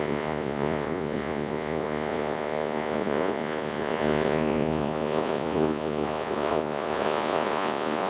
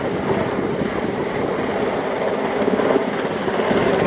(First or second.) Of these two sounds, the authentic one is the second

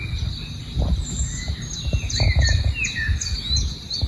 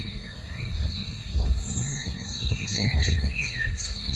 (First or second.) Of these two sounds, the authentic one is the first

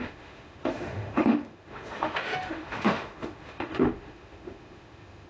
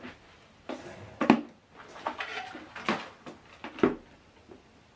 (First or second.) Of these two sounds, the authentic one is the second